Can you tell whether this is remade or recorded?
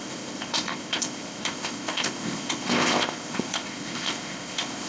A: remade